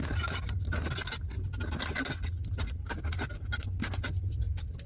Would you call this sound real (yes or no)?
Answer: yes